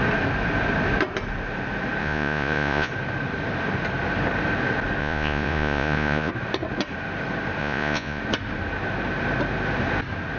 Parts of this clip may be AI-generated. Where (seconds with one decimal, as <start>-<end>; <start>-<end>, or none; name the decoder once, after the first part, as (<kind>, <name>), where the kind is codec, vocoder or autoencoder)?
2.0-2.9 (vocoder, Vocos); 5.0-6.3; 7.6-8.2